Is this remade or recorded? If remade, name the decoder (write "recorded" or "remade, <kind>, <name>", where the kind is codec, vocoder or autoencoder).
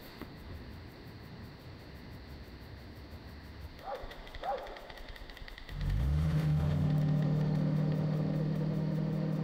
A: remade, autoencoder, DAC-VAE